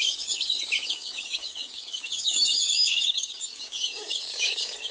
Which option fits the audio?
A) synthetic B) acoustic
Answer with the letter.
A